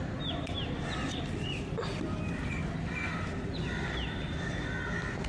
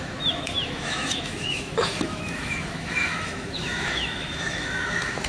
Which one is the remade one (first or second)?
second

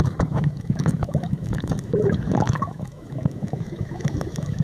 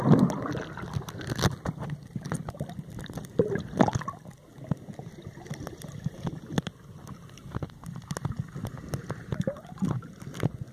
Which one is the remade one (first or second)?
first